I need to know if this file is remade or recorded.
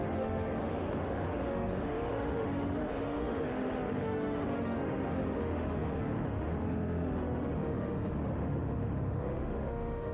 remade